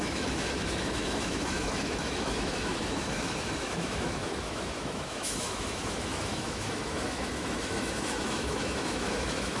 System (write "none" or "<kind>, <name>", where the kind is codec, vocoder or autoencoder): autoencoder, DAC-VAE